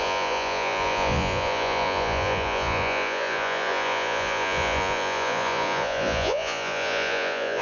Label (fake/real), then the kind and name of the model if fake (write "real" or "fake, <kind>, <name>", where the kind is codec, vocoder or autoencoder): fake, vocoder, Vocos